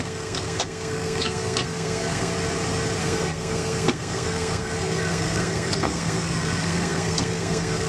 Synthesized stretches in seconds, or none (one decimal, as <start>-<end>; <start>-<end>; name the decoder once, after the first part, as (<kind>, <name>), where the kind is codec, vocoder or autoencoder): 0.0-2.3 (codec, SNAC); 3.0-7.9

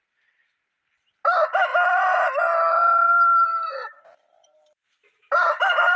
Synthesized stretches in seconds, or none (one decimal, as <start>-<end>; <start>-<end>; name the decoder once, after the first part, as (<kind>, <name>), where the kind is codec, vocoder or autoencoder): 1.7-5.3 (vocoder, BigVGAN v2)

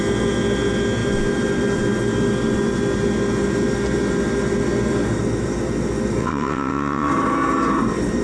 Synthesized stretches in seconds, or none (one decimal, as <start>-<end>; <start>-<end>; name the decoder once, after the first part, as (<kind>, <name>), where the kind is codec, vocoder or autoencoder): 6.2-7.1 (vocoder, WaveNeXt)

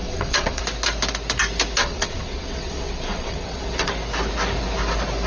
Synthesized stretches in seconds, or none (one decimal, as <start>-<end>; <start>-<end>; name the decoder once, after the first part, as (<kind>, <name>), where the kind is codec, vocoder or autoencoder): 0.0-0.6 (vocoder, WaveNeXt); 1.8-3.9